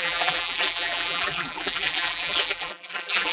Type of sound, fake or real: fake